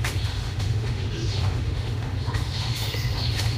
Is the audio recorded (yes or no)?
no